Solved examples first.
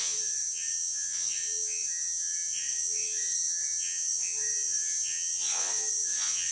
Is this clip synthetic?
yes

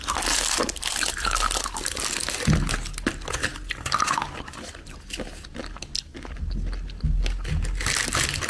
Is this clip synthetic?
no